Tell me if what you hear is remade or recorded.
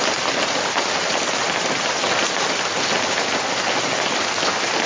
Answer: recorded